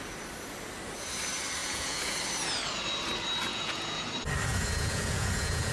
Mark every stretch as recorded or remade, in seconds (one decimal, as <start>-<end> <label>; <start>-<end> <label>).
0.0-1.6 recorded; 1.6-2.2 remade; 2.2-3.5 recorded; 3.5-4.1 remade; 4.1-4.5 recorded; 4.5-5.7 remade